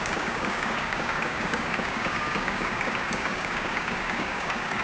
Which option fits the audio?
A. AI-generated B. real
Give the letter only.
A